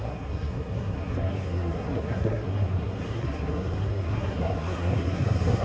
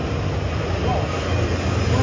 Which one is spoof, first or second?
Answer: first